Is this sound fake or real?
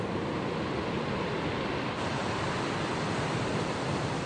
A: real